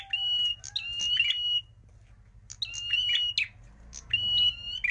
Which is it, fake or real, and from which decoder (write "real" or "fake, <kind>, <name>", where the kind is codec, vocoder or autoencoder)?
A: real